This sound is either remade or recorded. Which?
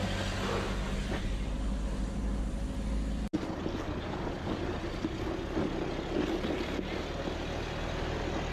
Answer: recorded